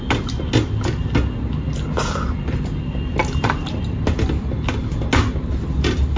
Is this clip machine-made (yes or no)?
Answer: no